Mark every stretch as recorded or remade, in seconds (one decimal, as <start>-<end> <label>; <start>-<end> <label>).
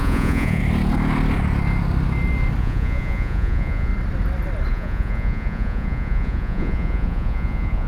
0.0-0.6 remade; 0.6-2.6 recorded; 2.6-3.9 remade; 3.9-4.7 recorded; 4.7-7.9 remade